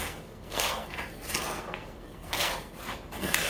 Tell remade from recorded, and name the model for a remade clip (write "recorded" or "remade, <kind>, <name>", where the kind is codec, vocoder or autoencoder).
remade, codec, SNAC